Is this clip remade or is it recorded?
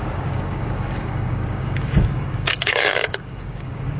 remade